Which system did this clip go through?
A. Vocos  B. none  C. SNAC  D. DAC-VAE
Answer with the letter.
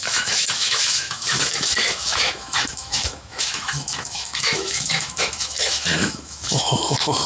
D